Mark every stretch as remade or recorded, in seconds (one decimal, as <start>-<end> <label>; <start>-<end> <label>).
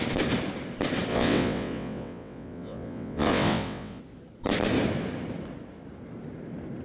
0.0-1.1 recorded; 1.1-4.0 remade; 4.0-6.8 recorded